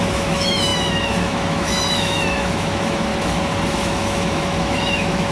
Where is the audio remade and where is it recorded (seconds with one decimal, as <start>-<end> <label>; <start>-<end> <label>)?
0.0-3.1 remade; 3.1-3.7 recorded; 3.7-5.3 remade